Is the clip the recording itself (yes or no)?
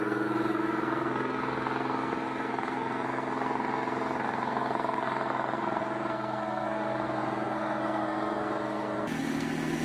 no